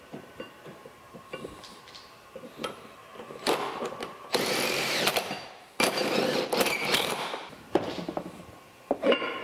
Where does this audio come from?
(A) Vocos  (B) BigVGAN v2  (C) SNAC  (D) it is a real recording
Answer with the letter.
B